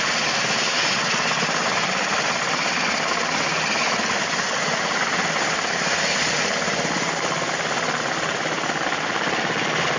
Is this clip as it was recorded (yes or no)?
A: yes